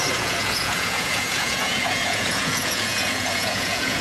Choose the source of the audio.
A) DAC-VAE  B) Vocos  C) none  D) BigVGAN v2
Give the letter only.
B